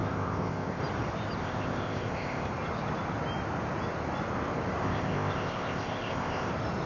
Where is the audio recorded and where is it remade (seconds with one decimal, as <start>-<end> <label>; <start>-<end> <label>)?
0.0-0.8 remade; 0.8-1.4 recorded; 1.4-2.5 remade; 2.5-4.8 recorded; 4.8-6.5 remade; 6.5-6.9 recorded